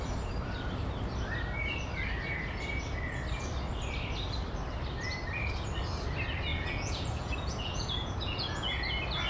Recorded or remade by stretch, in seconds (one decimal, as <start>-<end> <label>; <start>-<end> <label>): 0.0-6.5 recorded; 6.5-8.8 remade; 8.8-9.3 recorded